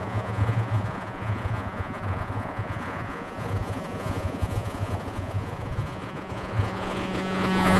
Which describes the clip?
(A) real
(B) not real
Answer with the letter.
B